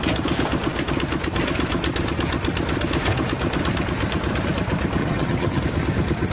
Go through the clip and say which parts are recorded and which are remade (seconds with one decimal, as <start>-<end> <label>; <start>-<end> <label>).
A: 0.0-5.0 recorded; 5.0-5.6 remade; 5.6-6.3 recorded